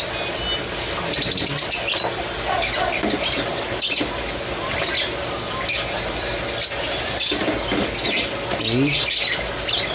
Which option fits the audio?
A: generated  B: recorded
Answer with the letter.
B